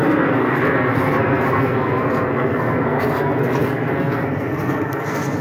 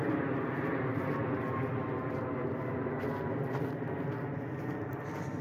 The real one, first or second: second